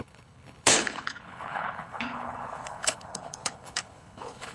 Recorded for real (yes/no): no